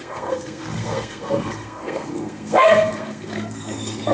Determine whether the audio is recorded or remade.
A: remade